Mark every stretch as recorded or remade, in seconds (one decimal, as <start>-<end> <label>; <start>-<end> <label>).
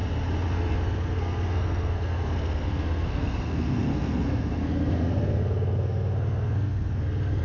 0.0-0.5 recorded; 0.5-7.4 remade